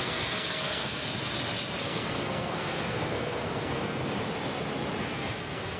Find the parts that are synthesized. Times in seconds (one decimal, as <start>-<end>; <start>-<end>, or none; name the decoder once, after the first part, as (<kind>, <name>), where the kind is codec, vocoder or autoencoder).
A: 0.0-1.0 (codec, SNAC); 1.8-4.0; 5.0-5.8

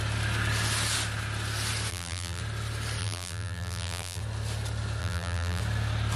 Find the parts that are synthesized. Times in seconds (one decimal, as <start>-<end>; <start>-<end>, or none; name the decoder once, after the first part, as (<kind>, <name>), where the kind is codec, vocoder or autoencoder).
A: 1.9-2.4 (vocoder, BigVGAN v2); 3.0-4.2; 5.0-5.6

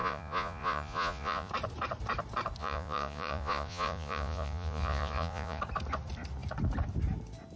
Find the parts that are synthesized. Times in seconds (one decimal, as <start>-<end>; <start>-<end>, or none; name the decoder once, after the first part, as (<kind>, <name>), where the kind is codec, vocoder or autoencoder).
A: 0.0-1.5 (vocoder, Vocos); 2.6-5.6

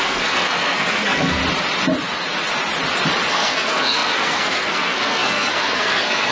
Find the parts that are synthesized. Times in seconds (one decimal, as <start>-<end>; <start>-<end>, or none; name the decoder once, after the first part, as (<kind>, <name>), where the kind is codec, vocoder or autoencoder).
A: 0.0-1.4 (codec, SNAC); 3.3-6.3

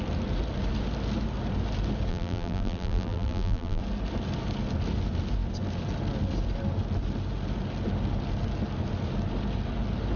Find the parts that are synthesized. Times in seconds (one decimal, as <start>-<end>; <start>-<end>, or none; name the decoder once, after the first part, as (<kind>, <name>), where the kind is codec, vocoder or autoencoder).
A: 2.1-3.8 (vocoder, BigVGAN v2)

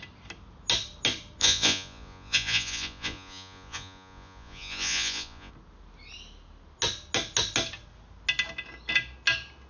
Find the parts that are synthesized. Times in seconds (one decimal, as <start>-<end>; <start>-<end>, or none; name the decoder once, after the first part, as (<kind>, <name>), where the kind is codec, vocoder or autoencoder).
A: 1.4-5.5 (vocoder, Vocos)